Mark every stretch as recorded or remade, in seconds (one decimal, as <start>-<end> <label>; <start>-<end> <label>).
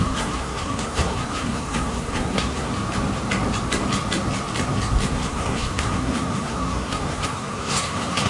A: 0.0-2.7 remade; 2.7-5.1 recorded; 5.1-8.3 remade